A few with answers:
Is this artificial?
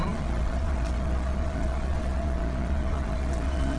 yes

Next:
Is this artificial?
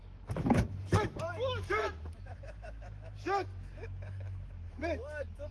yes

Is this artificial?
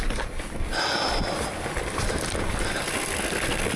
no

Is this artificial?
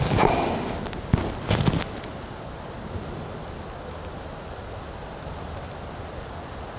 no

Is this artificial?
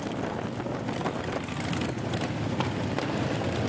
no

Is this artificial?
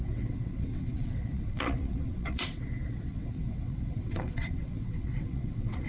yes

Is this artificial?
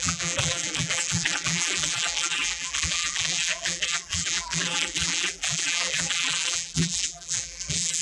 yes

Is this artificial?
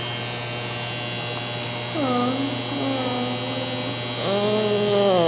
no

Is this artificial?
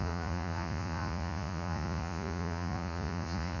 yes